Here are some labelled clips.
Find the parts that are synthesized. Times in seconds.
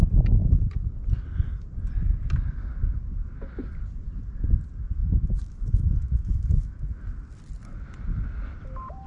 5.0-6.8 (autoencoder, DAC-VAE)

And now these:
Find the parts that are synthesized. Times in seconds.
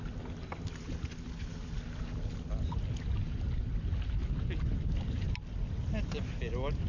none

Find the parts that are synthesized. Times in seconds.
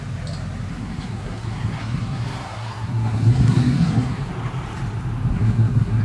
0.7-4.3 (codec, SNAC); 5.3-6.0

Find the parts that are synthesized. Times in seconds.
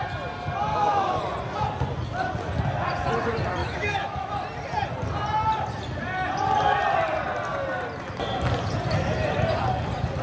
0.7-1.2 (autoencoder, DAC-VAE); 3.6-4.3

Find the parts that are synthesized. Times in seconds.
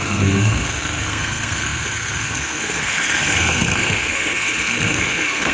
0.0-5.5 (codec, SNAC)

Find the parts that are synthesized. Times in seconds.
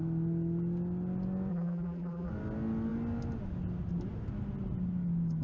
1.5-2.3 (vocoder, BigVGAN v2)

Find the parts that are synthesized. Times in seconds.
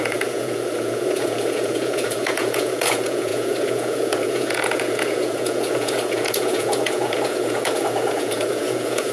0.0-9.1 (vocoder, Vocos)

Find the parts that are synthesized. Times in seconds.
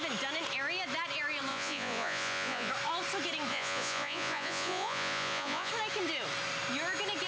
1.5-2.7 (vocoder, Vocos); 3.5-5.7